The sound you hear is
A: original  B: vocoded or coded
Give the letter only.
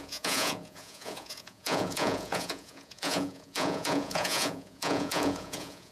B